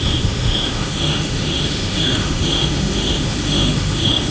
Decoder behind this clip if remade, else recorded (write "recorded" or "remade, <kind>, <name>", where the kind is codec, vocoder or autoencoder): remade, autoencoder, DAC-VAE